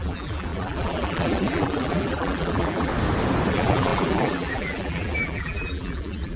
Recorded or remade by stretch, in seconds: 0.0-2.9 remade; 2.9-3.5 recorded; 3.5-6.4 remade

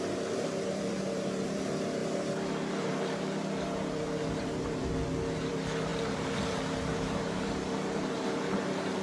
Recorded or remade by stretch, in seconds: 0.0-2.0 remade; 2.0-2.7 recorded; 2.7-4.8 remade; 4.8-5.5 recorded; 5.5-9.0 remade

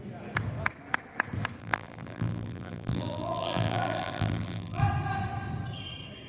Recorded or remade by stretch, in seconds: 0.0-1.6 recorded; 1.6-4.8 remade; 4.8-6.3 recorded

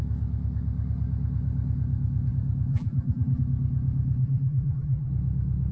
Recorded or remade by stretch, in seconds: 0.0-2.7 recorded; 2.7-3.4 remade; 3.4-4.2 recorded; 4.2-5.1 remade; 5.1-5.7 recorded

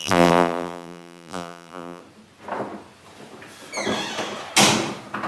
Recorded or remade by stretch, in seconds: 0.0-2.0 remade; 2.0-5.3 recorded

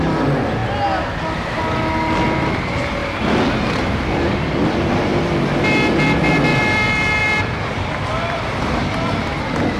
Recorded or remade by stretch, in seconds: 0.0-6.5 recorded; 6.5-9.4 remade; 9.4-9.8 recorded